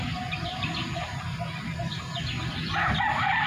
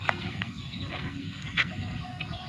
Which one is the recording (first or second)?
first